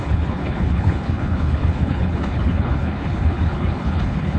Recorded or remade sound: remade